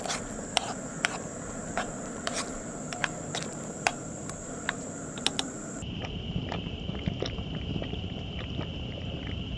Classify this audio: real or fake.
fake